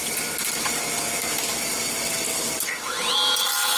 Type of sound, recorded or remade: recorded